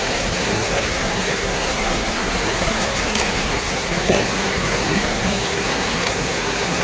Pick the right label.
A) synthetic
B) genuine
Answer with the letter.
A